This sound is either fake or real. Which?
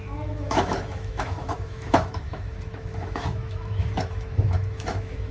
fake